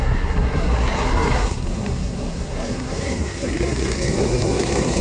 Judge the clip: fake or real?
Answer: fake